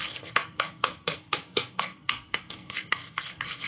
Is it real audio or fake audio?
fake